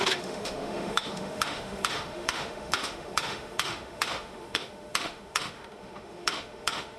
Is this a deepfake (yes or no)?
yes